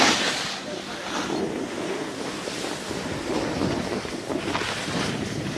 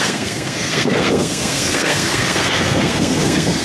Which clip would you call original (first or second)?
first